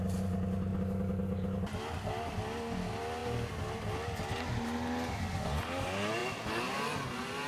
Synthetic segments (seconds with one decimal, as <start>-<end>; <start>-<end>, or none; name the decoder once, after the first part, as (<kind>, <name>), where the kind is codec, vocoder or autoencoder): none